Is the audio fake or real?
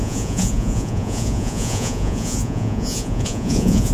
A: fake